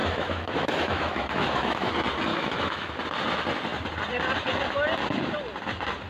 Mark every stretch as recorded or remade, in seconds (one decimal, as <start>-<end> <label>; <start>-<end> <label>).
0.0-1.9 remade; 1.9-2.3 recorded; 2.3-2.9 remade; 2.9-6.1 recorded